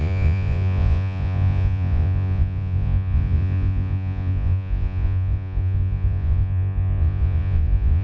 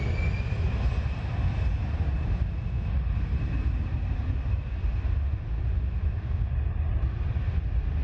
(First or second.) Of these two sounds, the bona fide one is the second